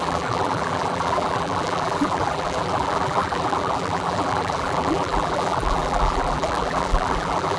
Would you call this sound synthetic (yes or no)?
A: yes